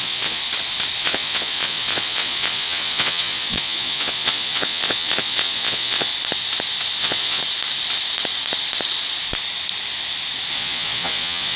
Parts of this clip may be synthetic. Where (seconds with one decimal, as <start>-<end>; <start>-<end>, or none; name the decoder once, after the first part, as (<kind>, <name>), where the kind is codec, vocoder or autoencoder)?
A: 0.0-0.4 (vocoder, Vocos); 1.0-6.1; 7.0-7.4; 10.5-11.6